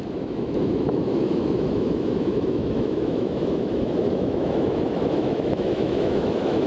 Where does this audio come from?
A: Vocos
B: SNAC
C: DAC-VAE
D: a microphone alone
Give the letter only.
C